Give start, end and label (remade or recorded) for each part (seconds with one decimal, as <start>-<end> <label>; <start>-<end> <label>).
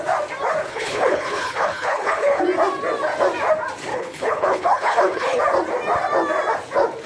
0.0-0.6 recorded; 0.6-2.4 remade; 2.4-3.9 recorded; 3.9-5.4 remade; 5.4-7.1 recorded